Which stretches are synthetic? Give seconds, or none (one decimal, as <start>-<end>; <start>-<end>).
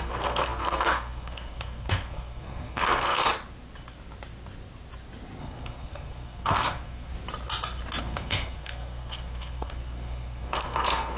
0.0-3.3; 5.4-7.1; 8.0-11.2